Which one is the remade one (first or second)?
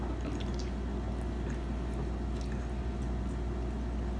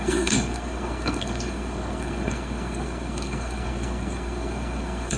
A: second